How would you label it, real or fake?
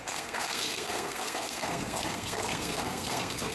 fake